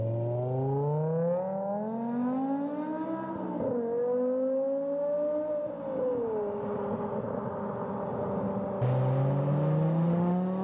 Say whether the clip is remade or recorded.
recorded